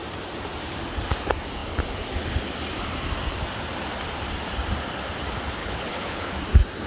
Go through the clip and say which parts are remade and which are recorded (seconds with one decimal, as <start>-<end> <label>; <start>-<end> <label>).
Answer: 0.0-5.6 recorded; 5.6-6.3 remade; 6.3-6.9 recorded